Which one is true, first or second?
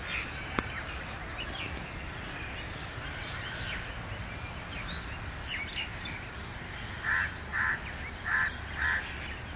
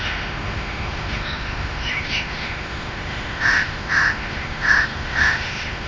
first